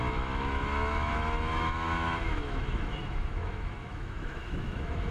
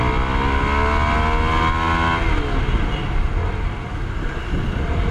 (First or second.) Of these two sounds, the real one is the second